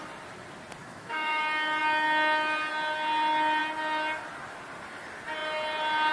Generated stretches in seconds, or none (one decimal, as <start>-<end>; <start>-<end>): 0.8-1.4